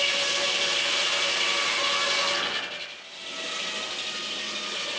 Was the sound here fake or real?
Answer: real